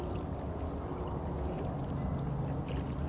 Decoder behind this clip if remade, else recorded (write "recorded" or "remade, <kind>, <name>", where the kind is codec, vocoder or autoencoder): recorded